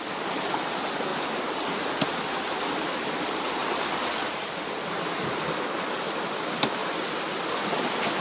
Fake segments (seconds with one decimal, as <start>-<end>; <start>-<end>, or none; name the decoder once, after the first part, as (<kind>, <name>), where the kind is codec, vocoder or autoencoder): 1.1-1.9 (vocoder, BigVGAN v2)